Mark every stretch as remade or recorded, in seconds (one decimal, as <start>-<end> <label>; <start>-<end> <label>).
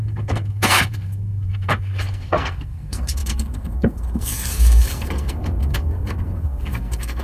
0.0-7.2 remade